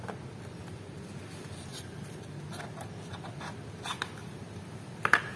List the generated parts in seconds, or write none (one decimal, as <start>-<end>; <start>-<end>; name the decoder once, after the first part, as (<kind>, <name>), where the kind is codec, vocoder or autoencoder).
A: 1.7-2.2 (vocoder, BigVGAN v2); 3.9-4.9